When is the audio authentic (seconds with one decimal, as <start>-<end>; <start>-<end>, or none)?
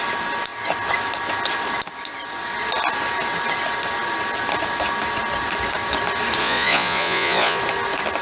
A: 0.0-6.4; 7.6-8.2